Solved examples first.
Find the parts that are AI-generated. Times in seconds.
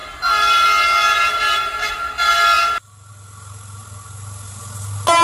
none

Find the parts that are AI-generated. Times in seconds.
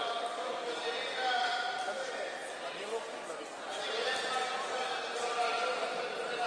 none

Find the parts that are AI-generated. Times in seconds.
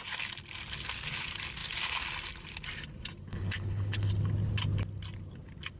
3.3-4.1 (codec, HILCodec)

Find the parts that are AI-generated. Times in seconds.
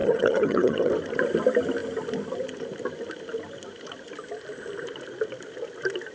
0.0-0.9 (vocoder, HiFi-GAN)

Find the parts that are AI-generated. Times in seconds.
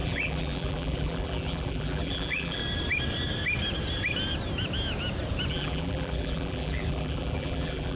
0.0-2.6 (vocoder, BigVGAN v2); 5.5-8.0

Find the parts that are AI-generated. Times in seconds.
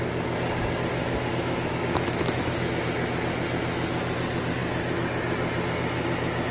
1.0-2.7 (autoencoder, DAC-VAE)